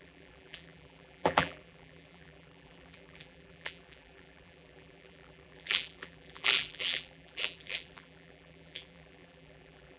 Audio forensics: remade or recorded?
remade